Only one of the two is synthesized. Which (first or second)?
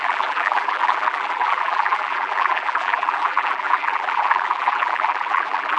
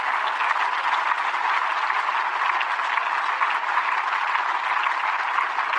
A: first